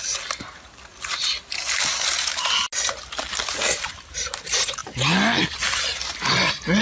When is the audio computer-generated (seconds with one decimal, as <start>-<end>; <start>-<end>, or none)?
none